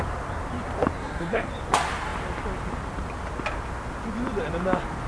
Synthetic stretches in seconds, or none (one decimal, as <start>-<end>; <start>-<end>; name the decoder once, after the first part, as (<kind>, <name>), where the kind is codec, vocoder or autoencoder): 1.0-1.5 (codec, SNAC)